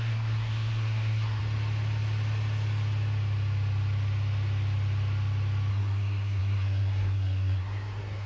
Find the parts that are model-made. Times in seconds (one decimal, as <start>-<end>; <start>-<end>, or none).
0.0-1.4; 5.7-8.3